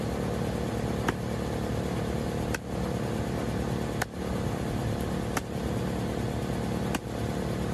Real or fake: real